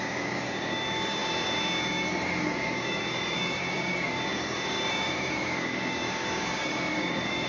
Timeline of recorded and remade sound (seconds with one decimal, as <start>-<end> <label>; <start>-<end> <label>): 0.0-7.5 remade